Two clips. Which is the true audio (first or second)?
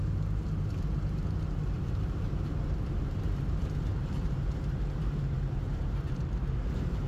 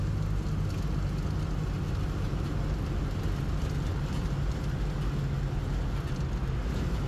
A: second